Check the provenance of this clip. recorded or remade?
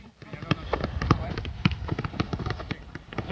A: remade